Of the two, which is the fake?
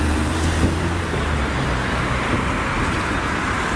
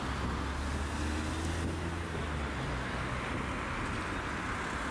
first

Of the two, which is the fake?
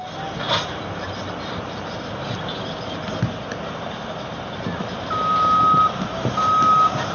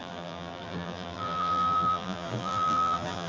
second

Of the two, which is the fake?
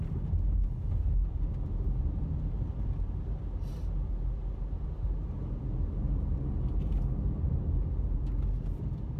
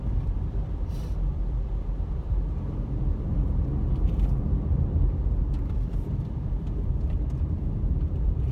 second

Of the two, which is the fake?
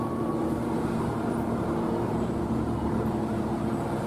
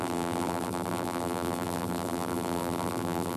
second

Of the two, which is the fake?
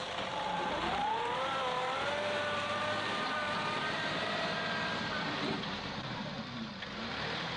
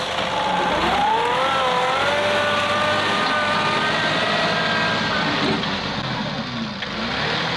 first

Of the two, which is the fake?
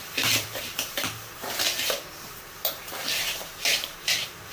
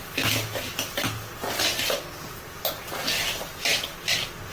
first